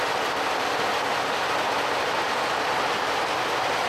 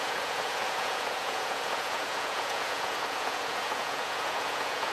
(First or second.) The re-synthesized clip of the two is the second